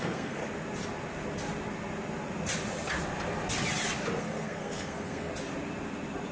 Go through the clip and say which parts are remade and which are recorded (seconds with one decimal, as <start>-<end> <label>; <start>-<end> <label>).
0.0-0.4 remade; 0.4-4.2 recorded; 4.2-5.3 remade; 5.3-6.3 recorded

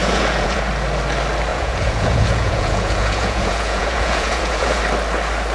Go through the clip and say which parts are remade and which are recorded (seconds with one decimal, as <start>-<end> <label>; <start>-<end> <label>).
0.0-0.7 remade; 0.7-1.5 recorded; 1.5-4.8 remade; 4.8-5.5 recorded

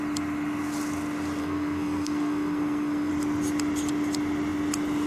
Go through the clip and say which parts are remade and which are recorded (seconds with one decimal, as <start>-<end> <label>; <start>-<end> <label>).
0.0-1.4 recorded; 1.4-3.1 remade; 3.1-5.1 recorded

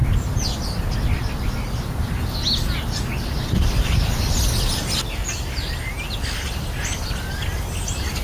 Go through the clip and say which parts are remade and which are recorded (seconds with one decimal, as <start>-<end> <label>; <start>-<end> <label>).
0.0-8.2 recorded